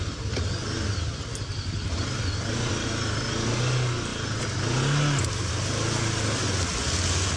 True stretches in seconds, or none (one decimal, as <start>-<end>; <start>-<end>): 0.0-7.4